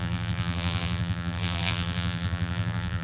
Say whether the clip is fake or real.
fake